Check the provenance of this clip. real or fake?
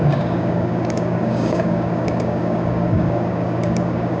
fake